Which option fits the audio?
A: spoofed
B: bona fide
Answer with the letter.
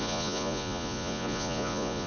A